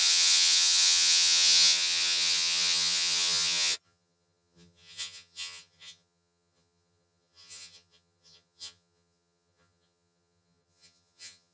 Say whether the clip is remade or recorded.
remade